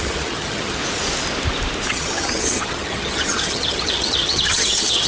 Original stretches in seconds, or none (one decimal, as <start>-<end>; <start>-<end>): 0.8-1.9